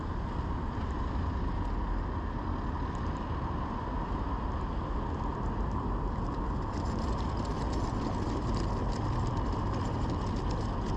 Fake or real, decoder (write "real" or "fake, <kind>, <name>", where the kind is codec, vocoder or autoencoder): real